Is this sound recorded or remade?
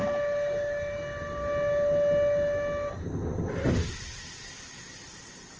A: recorded